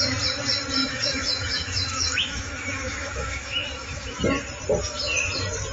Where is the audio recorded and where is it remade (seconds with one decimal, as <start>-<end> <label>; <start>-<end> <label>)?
0.0-0.8 recorded; 0.8-4.2 remade; 4.2-5.7 recorded